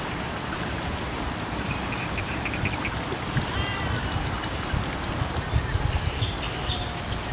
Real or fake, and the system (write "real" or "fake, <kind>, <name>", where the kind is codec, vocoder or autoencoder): real